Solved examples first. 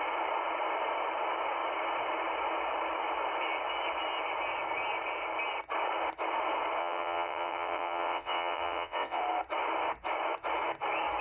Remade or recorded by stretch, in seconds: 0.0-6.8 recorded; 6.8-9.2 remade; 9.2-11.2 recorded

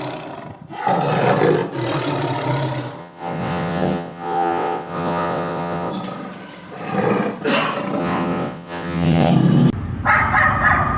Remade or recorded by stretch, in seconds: 0.0-3.0 recorded; 3.0-5.9 remade; 5.9-8.0 recorded; 8.0-9.3 remade; 9.3-11.0 recorded

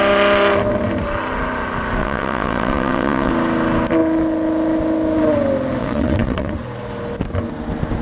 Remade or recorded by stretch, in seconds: 0.0-2.0 recorded; 2.0-3.3 remade; 3.3-5.8 recorded; 5.8-6.5 remade; 6.5-8.0 recorded

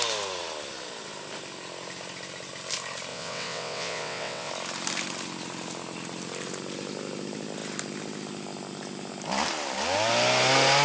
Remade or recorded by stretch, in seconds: 0.0-3.1 recorded; 3.1-4.5 remade; 4.5-10.8 recorded

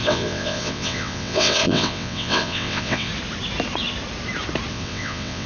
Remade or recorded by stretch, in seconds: 0.0-3.1 remade; 3.1-4.7 recorded; 4.7-5.5 remade

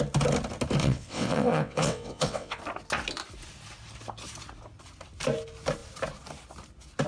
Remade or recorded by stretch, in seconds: 0.0-0.8 recorded; 0.8-2.6 remade; 2.6-7.1 recorded